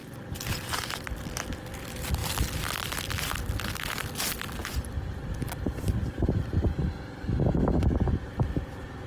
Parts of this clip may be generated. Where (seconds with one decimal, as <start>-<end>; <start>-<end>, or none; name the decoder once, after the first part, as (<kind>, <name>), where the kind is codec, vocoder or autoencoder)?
0.0-0.8 (vocoder, BigVGAN v2); 2.2-2.7; 4.6-6.8